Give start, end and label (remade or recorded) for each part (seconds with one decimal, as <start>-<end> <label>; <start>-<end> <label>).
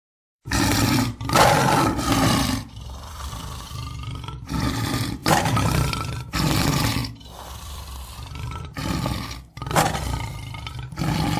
0.0-7.0 remade; 7.0-7.6 recorded; 7.6-8.8 remade; 8.8-11.4 recorded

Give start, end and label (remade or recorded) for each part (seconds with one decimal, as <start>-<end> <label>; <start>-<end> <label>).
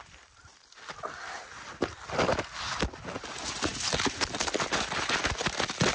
0.0-2.8 remade; 2.8-5.9 recorded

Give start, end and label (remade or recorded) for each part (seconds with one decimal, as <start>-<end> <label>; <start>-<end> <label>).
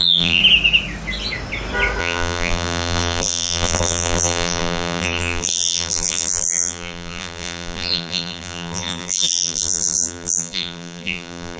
0.0-0.4 remade; 0.4-2.0 recorded; 2.0-11.6 remade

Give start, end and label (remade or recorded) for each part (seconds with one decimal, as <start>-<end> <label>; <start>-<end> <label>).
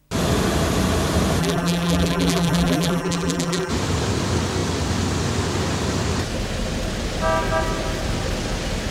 0.0-1.4 recorded; 1.4-3.7 remade; 3.7-8.9 recorded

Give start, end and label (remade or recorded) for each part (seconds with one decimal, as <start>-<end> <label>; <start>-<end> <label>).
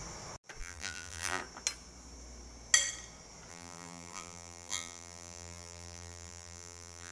0.0-0.6 recorded; 0.6-1.4 remade; 1.4-3.5 recorded; 3.5-7.1 remade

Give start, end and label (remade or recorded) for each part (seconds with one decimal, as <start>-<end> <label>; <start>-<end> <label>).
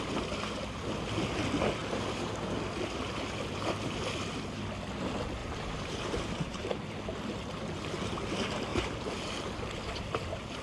0.0-1.8 recorded; 1.8-2.4 remade; 2.4-5.4 recorded; 5.4-6.9 remade; 6.9-8.7 recorded; 8.7-9.3 remade; 9.3-10.6 recorded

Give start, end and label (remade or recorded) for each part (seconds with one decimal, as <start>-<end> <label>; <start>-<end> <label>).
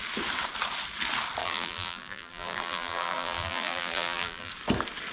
0.0-1.4 recorded; 1.4-4.5 remade; 4.5-5.1 recorded